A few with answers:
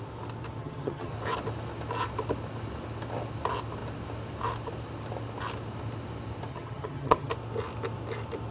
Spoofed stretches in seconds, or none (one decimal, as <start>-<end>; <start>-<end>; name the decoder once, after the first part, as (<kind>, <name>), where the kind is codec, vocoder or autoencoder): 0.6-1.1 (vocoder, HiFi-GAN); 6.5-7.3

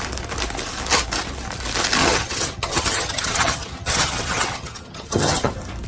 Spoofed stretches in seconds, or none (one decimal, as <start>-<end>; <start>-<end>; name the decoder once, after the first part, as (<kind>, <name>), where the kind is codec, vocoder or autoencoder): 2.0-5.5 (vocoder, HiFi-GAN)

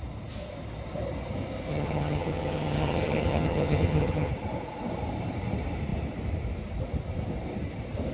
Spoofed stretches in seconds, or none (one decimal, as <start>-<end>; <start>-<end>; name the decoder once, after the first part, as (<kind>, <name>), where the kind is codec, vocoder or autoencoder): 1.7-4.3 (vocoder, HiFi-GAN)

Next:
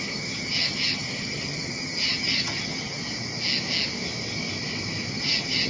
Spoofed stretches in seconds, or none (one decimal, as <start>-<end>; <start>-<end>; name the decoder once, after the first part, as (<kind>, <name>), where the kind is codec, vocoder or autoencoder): 0.0-3.0 (vocoder, HiFi-GAN); 5.1-5.7